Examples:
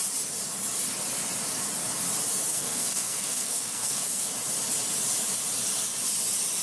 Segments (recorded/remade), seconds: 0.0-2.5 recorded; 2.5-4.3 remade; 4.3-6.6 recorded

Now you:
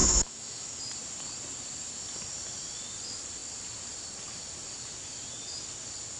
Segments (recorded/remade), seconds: 0.0-0.8 remade; 0.8-6.2 recorded

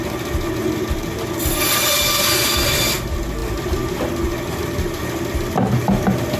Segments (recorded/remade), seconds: 0.0-3.4 recorded; 3.4-4.0 remade; 4.0-6.4 recorded